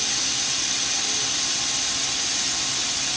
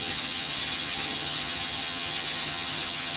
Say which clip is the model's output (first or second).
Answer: second